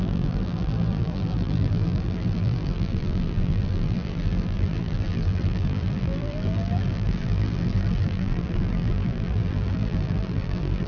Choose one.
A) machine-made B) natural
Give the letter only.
A